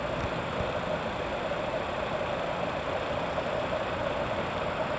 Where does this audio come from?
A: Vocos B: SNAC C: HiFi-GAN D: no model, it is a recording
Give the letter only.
D